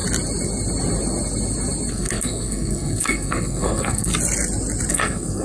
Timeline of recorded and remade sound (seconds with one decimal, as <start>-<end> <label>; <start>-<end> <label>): 0.0-1.9 recorded; 1.9-4.1 remade; 4.1-4.9 recorded; 4.9-5.4 remade